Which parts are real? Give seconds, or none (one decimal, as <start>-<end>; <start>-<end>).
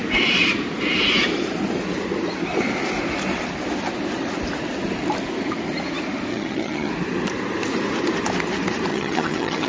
0.0-6.3; 6.9-8.9